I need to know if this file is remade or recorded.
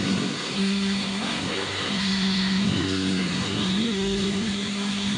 remade